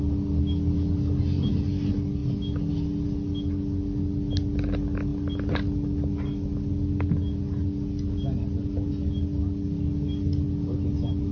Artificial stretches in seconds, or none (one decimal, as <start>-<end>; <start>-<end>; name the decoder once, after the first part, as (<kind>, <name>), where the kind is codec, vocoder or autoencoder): none

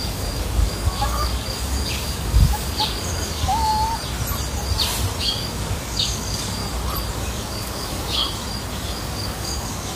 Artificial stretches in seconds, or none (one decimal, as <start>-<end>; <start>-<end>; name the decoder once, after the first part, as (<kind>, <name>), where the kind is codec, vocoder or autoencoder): 0.0-3.7 (codec, DAC); 5.2-6.6; 7.1-8.2; 8.7-10.0

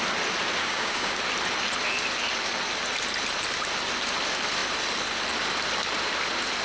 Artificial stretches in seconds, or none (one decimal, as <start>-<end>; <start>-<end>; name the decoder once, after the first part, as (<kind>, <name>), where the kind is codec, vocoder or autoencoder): 0.6-1.2 (codec, DAC)

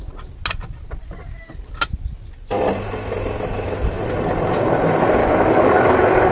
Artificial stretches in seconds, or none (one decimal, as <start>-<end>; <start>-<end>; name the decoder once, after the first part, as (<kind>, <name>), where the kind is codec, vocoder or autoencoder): 5.2-6.3 (codec, DAC)

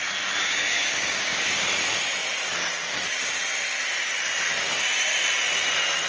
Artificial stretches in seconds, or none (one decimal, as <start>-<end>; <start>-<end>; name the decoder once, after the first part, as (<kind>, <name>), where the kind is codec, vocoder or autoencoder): 0.4-1.7 (codec, DAC)

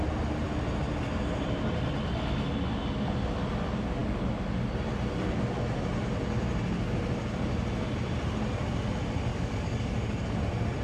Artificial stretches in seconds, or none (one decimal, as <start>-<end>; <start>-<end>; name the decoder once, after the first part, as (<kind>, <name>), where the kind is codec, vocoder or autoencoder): 9.3-10.4 (codec, DAC)

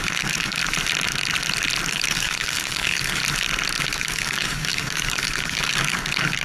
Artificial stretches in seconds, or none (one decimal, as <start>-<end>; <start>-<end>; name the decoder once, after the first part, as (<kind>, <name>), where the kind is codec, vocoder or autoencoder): 0.0-0.6 (codec, DAC); 1.9-3.2; 3.8-6.4